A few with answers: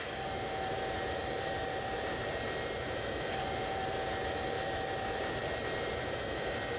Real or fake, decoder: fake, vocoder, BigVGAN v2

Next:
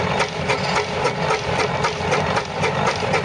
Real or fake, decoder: real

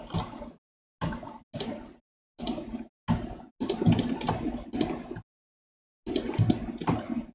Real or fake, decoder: real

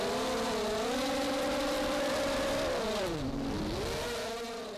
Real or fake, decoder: real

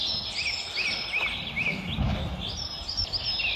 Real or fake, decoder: real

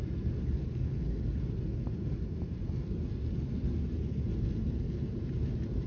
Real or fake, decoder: real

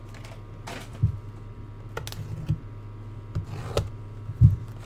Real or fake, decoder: real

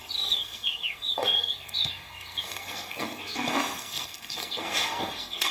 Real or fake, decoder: fake, codec, SNAC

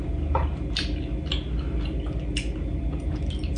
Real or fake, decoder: real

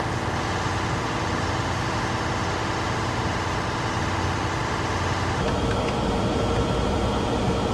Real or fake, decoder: real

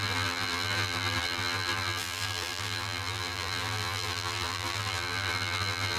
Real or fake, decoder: fake, vocoder, BigVGAN v2